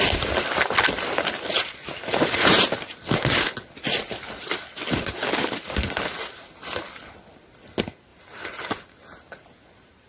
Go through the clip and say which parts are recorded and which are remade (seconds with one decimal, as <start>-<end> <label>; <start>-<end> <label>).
0.0-1.5 recorded; 1.5-2.9 remade; 2.9-10.1 recorded